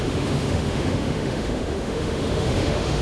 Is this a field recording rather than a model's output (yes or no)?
no